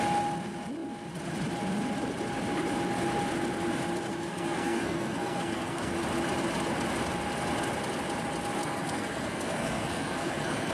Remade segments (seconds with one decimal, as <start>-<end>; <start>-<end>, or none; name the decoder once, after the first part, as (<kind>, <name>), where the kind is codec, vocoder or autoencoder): 4.1-5.9 (codec, SNAC); 8.6-10.7